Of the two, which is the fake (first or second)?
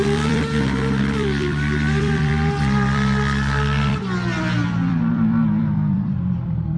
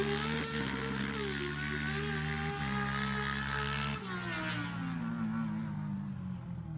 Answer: first